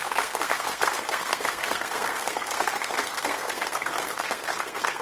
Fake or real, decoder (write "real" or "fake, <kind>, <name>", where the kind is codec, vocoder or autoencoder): fake, codec, SNAC